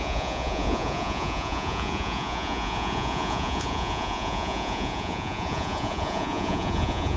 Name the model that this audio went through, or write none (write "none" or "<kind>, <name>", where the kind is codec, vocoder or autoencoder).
vocoder, Vocos